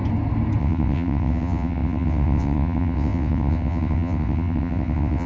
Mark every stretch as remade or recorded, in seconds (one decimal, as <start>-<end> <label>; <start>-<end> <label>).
0.0-0.6 recorded; 0.6-5.3 remade